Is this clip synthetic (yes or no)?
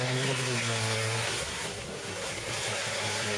yes